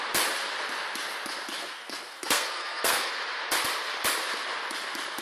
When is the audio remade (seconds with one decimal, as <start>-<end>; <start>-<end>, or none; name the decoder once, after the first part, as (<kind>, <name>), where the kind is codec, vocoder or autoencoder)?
1.6-3.1 (codec, SNAC)